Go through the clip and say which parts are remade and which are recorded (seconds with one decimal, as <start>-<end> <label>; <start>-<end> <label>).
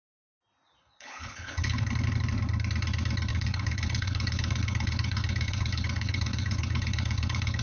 0.0-0.8 recorded; 0.8-1.8 remade; 1.8-3.3 recorded; 3.3-7.6 remade